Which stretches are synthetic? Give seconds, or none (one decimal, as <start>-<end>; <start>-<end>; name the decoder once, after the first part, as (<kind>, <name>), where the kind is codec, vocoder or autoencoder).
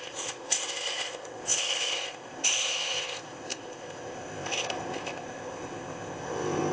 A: 0.0-6.7 (codec, ZipCodec)